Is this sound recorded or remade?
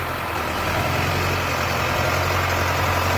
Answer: recorded